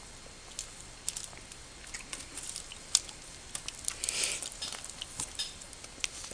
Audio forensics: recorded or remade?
recorded